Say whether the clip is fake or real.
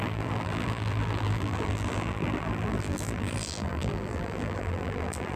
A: fake